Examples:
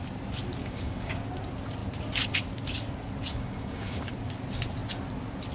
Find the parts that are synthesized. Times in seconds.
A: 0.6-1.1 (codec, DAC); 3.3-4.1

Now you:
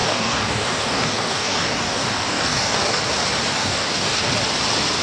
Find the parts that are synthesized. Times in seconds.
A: 0.0-3.0 (codec, DAC); 3.5-4.3

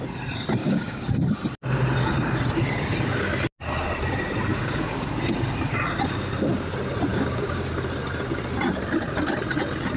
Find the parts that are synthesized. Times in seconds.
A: 0.6-1.1 (codec, DAC); 4.5-5.1; 7.1-7.7

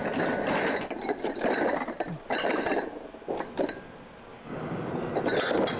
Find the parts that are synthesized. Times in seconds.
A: 4.3-4.9 (codec, DAC)

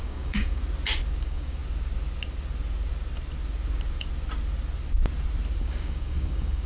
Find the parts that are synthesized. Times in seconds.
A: 0.0-0.6 (codec, DAC); 1.2-1.6; 5.6-6.7

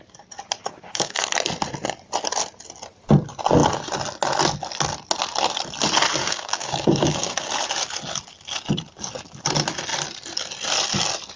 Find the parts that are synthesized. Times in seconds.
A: 0.6-1.2 (codec, DAC); 6.2-7.5

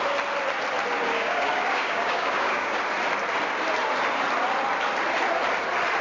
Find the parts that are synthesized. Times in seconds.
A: 1.1-2.8 (codec, DAC)